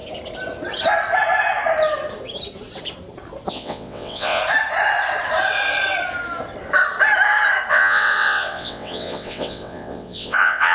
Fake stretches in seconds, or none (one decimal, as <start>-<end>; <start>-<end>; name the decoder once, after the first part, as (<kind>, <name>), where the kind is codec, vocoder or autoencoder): 3.5-4.4 (vocoder, WaveNeXt); 7.7-10.7